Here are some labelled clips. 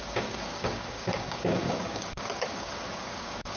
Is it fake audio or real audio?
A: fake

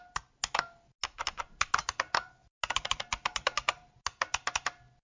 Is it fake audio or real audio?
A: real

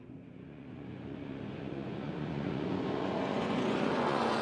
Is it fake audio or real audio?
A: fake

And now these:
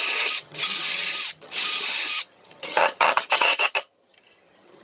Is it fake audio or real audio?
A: fake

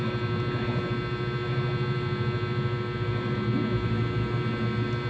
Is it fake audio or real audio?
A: real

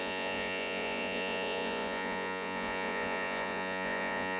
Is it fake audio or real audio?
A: fake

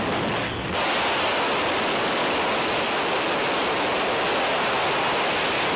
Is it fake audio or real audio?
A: real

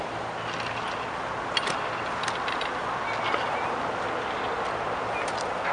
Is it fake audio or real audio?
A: real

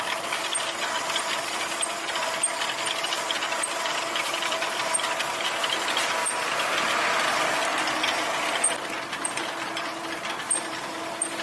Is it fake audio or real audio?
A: real